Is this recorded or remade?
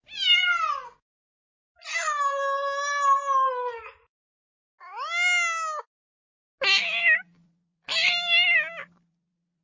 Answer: recorded